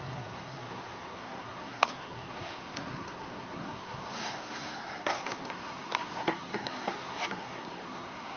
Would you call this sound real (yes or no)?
no